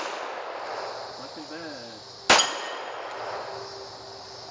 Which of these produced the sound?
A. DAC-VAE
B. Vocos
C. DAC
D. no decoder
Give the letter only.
D